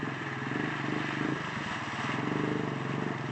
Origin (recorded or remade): recorded